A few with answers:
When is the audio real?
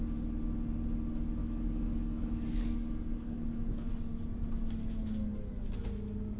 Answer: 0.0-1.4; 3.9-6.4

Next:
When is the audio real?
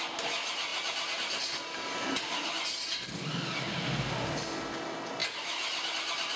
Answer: 0.0-6.4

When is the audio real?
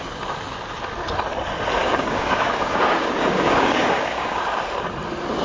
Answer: 0.0-1.8; 4.4-5.4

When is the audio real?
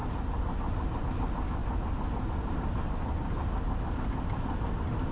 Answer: 0.0-5.1